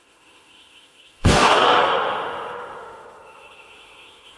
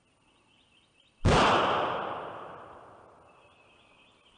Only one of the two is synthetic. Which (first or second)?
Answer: first